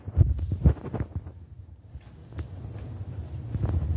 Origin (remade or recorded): recorded